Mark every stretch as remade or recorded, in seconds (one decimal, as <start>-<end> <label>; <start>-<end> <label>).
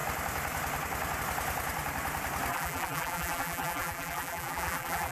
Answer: 0.0-2.5 recorded; 2.5-5.1 remade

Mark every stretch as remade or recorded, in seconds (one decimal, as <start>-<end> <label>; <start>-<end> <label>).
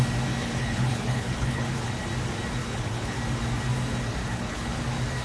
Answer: 0.0-0.4 recorded; 0.4-1.9 remade; 1.9-2.6 recorded; 2.6-3.2 remade; 3.2-4.2 recorded; 4.2-4.8 remade; 4.8-5.2 recorded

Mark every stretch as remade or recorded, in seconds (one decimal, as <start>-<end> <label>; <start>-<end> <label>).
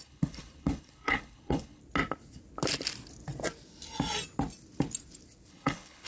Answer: 0.0-1.8 remade; 1.8-5.5 recorded; 5.5-6.1 remade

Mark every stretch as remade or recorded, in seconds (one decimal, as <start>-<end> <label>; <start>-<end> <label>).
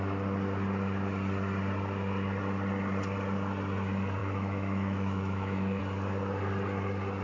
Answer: 0.0-4.2 recorded; 4.2-5.8 remade; 5.8-7.2 recorded